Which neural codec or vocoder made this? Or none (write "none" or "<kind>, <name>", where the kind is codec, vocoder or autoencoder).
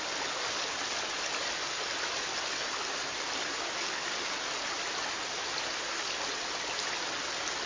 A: none